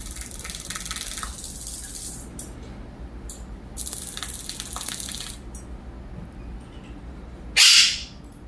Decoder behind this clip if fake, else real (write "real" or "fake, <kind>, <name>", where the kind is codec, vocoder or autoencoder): real